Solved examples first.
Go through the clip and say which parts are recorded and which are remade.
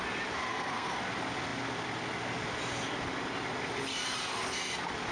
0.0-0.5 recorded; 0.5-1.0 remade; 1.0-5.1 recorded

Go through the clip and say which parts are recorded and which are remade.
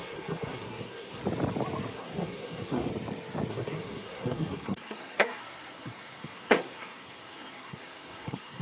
0.0-1.2 remade; 1.2-1.9 recorded; 1.9-2.9 remade; 2.9-3.5 recorded; 3.5-8.6 remade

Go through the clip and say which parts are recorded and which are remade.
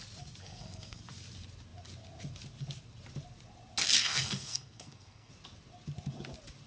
0.0-0.4 recorded; 0.4-1.0 remade; 1.0-4.0 recorded; 4.0-5.3 remade; 5.3-6.7 recorded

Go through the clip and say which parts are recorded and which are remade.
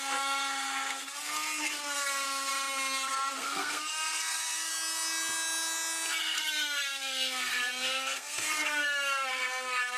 0.0-2.5 remade; 2.5-3.1 recorded; 3.1-4.7 remade; 4.7-6.2 recorded; 6.2-10.0 remade